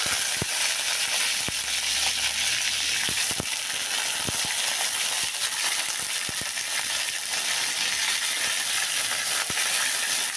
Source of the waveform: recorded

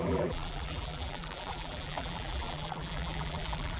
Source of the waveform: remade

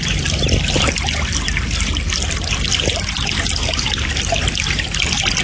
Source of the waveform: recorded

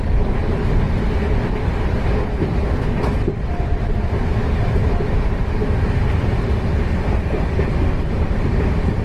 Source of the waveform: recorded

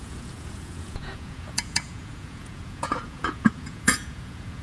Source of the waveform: remade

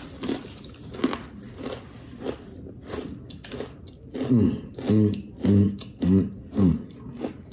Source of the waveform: recorded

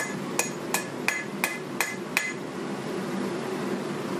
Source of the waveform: recorded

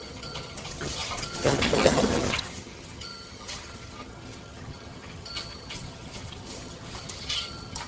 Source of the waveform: remade